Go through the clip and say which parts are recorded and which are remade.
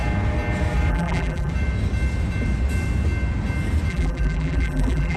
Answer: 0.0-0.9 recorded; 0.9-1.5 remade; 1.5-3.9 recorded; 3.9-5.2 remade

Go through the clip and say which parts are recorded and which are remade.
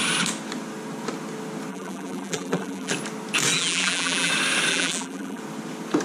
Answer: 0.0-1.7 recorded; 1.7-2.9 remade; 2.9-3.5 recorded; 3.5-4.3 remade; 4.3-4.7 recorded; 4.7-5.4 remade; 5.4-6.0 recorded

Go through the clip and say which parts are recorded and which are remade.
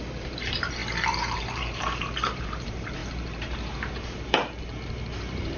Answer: 0.0-4.4 remade; 4.4-5.1 recorded; 5.1-5.6 remade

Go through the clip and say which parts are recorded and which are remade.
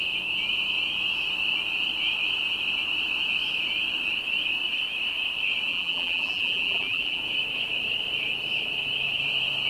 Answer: 0.0-5.7 recorded; 5.7-7.2 remade; 7.2-9.7 recorded